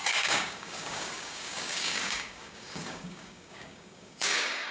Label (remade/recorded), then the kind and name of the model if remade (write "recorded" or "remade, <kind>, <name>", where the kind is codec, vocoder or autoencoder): remade, codec, DAC